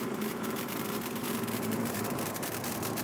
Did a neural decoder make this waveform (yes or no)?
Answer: yes